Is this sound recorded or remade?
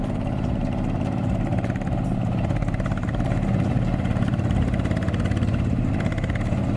remade